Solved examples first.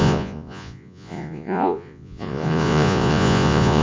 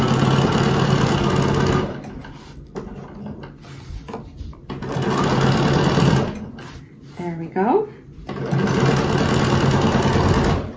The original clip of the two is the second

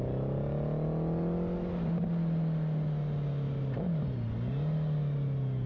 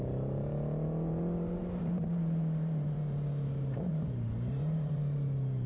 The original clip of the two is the first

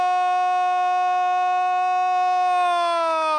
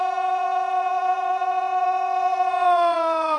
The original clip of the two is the first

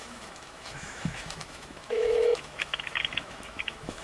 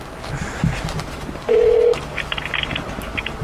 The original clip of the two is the second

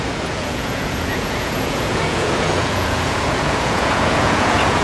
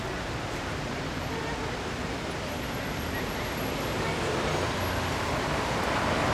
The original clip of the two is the second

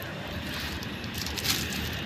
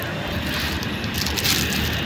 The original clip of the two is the second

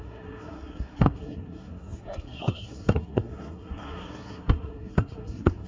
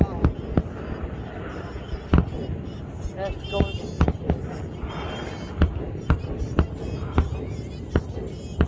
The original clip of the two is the second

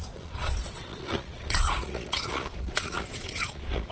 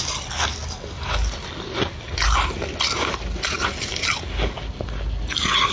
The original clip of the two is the second